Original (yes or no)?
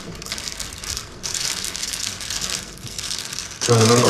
no